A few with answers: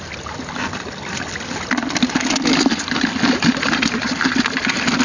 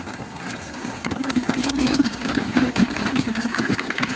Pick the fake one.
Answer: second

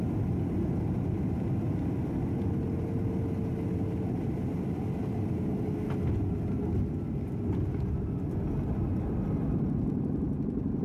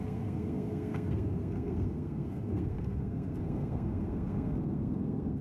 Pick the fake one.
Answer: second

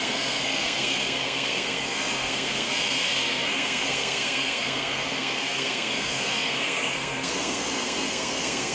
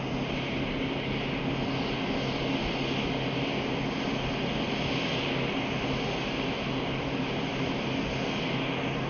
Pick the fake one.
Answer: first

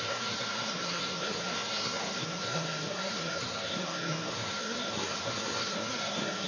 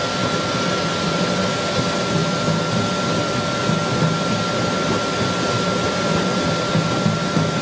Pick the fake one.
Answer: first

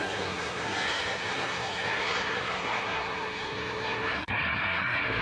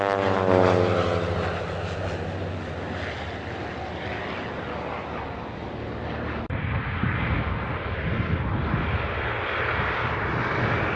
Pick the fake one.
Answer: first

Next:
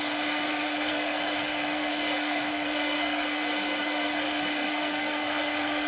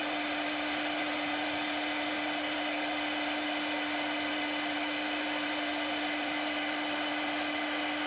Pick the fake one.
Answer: first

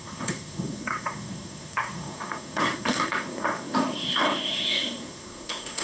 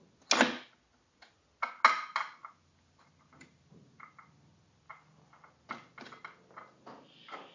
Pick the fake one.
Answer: first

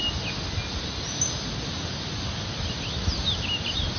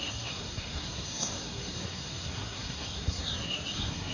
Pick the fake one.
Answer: second